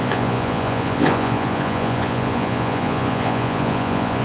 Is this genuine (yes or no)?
no